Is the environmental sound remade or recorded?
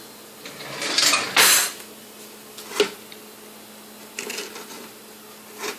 recorded